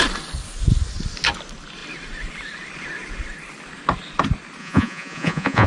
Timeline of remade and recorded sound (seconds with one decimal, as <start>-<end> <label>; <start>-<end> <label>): 0.0-4.6 recorded; 4.6-5.7 remade